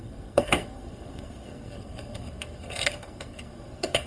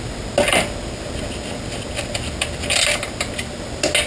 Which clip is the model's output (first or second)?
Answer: first